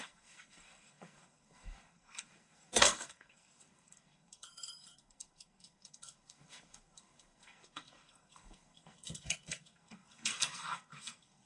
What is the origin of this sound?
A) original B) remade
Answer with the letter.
B